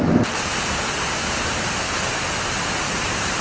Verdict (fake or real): fake